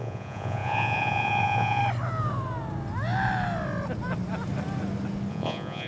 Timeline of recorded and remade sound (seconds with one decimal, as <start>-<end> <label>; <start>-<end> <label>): 0.0-1.8 remade; 1.8-5.3 recorded; 5.3-5.9 remade